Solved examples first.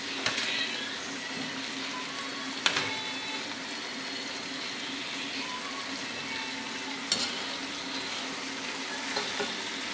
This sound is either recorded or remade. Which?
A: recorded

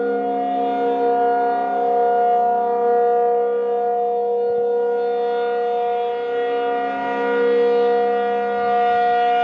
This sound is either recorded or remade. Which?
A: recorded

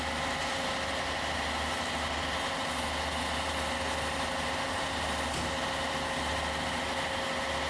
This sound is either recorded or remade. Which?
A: recorded